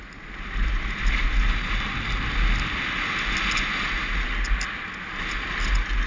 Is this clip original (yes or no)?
yes